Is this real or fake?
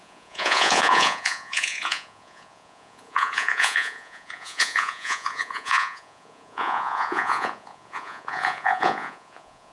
fake